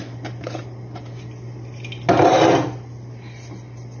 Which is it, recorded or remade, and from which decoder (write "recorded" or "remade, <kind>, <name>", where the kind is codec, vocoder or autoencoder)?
recorded